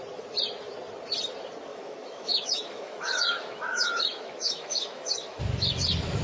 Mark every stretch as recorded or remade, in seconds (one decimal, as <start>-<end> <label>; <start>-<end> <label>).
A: 0.0-1.7 recorded; 1.7-5.4 remade; 5.4-6.2 recorded